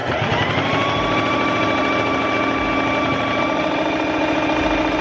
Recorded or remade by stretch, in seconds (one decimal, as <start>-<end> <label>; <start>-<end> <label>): 0.0-5.0 recorded